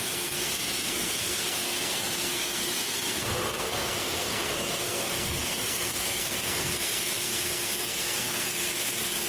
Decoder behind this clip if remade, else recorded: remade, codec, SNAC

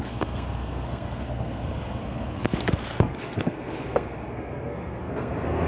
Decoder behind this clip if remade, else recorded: remade, codec, SNAC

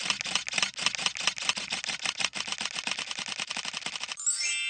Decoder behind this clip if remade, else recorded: recorded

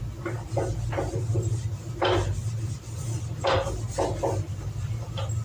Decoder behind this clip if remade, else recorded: recorded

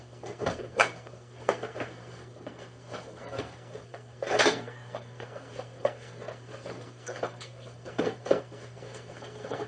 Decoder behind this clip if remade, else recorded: remade, codec, SNAC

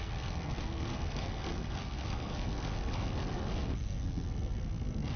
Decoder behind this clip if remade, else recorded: remade, codec, SNAC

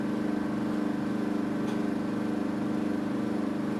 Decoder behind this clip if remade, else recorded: recorded